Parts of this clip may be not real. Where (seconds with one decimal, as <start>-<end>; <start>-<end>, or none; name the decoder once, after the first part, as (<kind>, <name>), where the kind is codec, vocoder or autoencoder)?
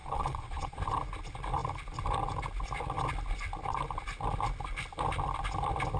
0.0-0.8 (vocoder, Vocos)